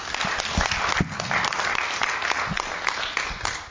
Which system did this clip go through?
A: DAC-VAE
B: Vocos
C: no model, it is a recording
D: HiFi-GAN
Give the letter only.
C